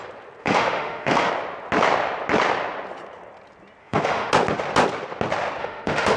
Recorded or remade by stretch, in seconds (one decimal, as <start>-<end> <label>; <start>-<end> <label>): 0.0-0.4 recorded; 0.4-1.3 remade; 1.3-3.8 recorded; 3.8-4.3 remade; 4.3-5.6 recorded; 5.6-6.2 remade